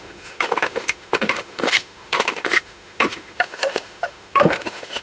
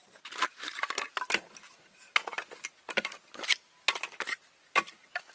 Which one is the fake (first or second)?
first